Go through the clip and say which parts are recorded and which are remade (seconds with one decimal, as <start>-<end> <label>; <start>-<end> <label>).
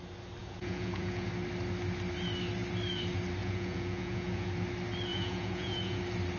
0.0-0.4 recorded; 0.4-1.3 remade; 1.3-3.4 recorded; 3.4-4.5 remade; 4.5-5.1 recorded; 5.1-6.0 remade; 6.0-6.4 recorded